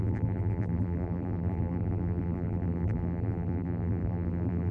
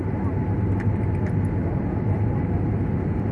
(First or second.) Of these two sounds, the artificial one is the first